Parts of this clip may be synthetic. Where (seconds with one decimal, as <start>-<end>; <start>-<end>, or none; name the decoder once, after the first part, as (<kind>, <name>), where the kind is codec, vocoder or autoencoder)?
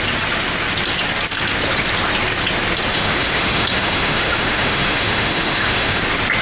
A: 2.9-6.0 (autoencoder, DAC-VAE)